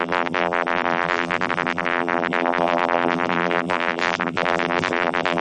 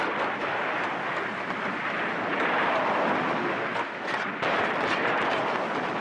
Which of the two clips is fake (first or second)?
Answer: first